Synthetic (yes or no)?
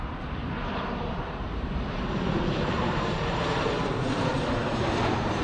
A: yes